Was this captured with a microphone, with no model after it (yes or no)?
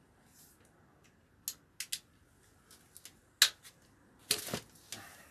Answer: yes